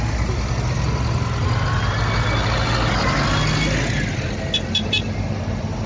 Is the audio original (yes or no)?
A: yes